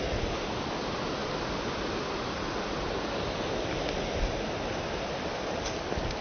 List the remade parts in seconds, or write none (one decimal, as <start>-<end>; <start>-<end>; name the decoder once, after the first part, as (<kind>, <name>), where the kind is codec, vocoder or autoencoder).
none